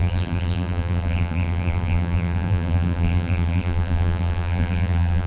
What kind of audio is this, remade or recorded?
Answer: remade